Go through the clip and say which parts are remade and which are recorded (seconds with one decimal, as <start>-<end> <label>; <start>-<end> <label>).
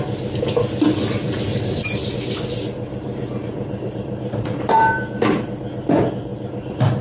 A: 0.0-1.5 recorded; 1.5-2.1 remade; 2.1-2.9 recorded; 2.9-5.2 remade; 5.2-7.0 recorded